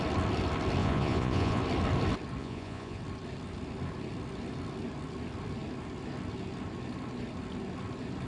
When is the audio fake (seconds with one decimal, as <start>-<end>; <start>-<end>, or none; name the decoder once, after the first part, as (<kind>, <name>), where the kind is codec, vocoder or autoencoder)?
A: 0.8-1.6 (vocoder, Vocos); 2.4-3.0